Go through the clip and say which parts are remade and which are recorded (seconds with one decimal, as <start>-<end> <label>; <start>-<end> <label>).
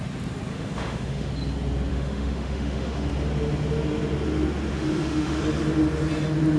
0.0-0.5 recorded; 0.5-1.3 remade; 1.3-1.9 recorded; 1.9-3.1 remade; 3.1-4.7 recorded; 4.7-5.4 remade; 5.4-6.6 recorded